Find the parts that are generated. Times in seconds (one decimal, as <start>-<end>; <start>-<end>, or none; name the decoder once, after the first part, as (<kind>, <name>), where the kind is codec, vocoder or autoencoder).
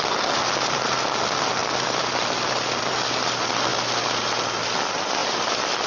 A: none